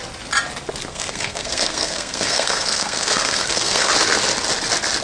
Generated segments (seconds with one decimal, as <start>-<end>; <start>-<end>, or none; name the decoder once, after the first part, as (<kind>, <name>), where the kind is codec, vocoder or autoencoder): 0.9-3.9 (codec, SNAC)